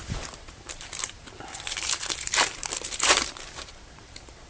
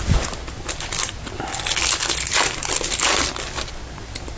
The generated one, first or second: first